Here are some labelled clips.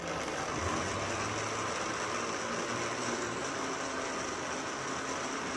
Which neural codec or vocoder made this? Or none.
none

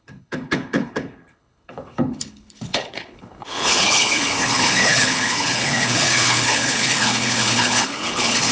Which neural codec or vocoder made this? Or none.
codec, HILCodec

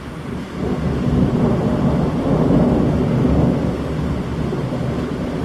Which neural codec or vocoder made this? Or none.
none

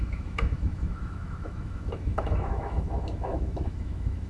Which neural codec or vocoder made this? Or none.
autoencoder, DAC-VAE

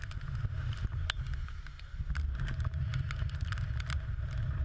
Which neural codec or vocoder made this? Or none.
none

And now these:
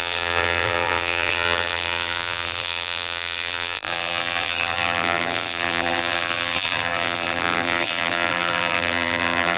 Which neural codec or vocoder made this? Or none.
vocoder, BigVGAN v2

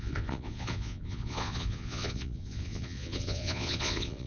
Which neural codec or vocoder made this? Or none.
vocoder, Vocos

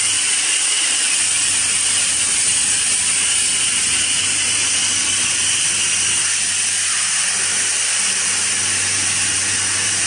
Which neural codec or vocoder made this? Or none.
none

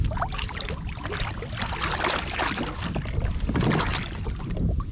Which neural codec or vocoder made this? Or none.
none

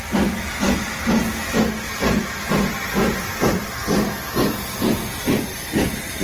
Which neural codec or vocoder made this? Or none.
none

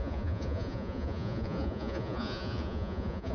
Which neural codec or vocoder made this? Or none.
vocoder, Vocos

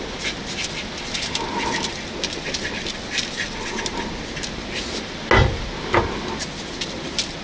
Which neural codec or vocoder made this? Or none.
none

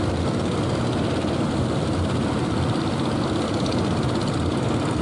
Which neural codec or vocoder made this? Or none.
none